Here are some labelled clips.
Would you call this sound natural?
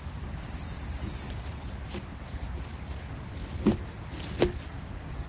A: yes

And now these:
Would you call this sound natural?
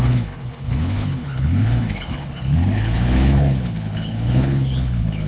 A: no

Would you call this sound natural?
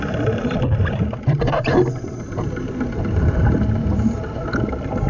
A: yes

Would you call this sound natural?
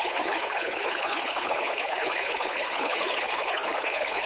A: no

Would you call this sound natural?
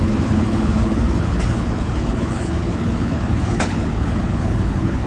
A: no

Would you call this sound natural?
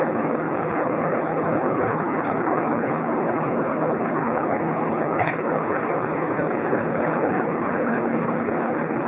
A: no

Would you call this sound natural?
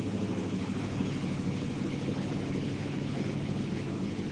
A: no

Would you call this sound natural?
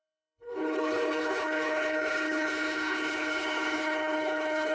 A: no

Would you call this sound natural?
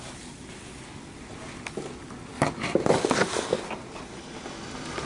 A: yes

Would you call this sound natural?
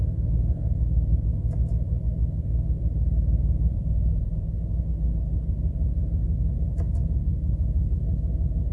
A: yes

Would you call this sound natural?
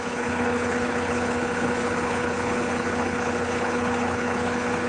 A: no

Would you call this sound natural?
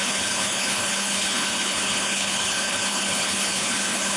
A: no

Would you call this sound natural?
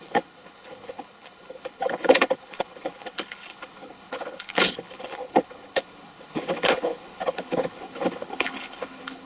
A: no